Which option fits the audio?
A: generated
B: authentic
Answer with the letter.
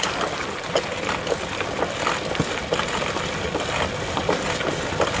B